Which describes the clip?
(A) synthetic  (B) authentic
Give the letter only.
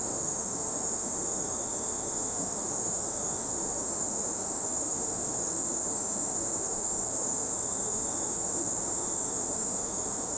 A